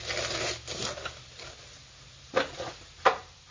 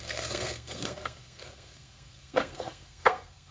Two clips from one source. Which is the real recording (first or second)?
first